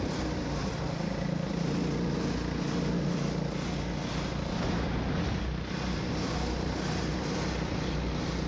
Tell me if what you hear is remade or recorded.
recorded